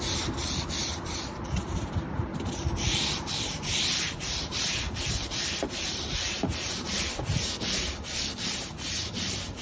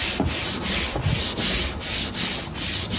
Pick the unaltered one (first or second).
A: second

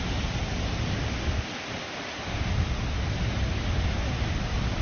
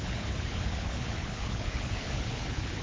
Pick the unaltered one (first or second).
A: first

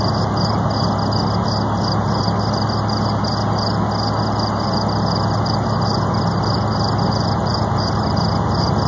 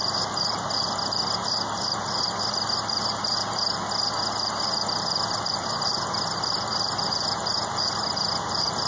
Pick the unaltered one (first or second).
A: first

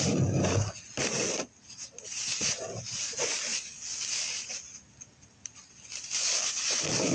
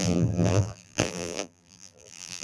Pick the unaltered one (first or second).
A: first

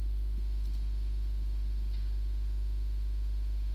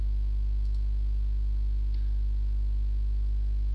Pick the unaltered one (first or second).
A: second